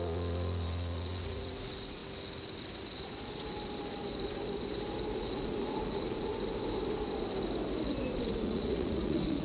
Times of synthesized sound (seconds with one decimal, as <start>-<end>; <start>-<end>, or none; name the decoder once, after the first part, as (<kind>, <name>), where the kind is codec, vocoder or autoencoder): 0.0-2.0 (vocoder, Vocos); 5.2-6.3; 8.4-9.4